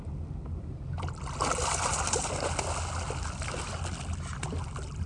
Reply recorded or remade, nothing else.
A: recorded